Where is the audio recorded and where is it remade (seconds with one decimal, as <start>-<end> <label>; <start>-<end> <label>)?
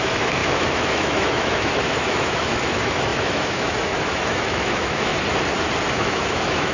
0.0-5.1 remade; 5.1-5.9 recorded; 5.9-6.7 remade